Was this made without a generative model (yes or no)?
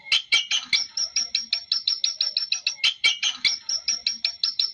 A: yes